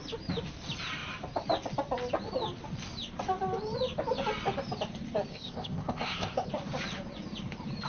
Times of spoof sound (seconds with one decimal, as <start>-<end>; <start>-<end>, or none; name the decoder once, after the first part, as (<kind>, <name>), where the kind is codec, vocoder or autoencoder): 5.3-6.5 (codec, ZipCodec)